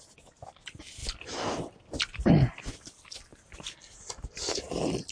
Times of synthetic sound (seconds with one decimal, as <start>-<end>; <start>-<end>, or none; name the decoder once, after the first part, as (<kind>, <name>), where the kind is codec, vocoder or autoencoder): 1.0-2.3 (vocoder, BigVGAN v2); 3.3-5.1